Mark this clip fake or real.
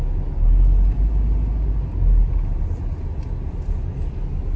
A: real